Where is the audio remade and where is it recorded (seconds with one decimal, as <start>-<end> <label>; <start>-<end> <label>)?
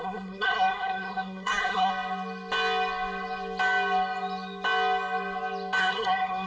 0.0-1.9 remade; 1.9-5.8 recorded; 5.8-6.5 remade